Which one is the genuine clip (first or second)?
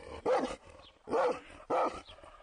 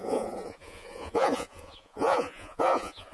first